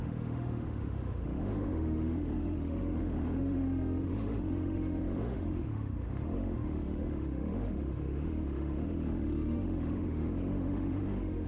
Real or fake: fake